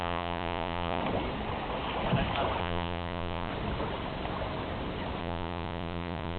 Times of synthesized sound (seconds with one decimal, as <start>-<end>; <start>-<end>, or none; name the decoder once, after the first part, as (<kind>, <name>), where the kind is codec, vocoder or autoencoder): 0.0-1.0 (vocoder, Vocos); 2.6-3.5; 5.2-6.4